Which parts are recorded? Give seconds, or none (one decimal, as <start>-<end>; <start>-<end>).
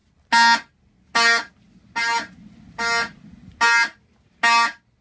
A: 0.0-5.0